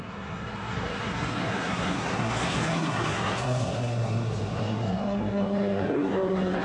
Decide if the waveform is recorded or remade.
remade